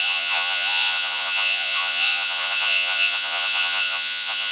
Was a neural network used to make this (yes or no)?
yes